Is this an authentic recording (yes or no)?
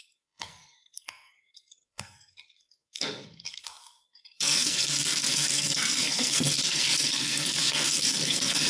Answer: no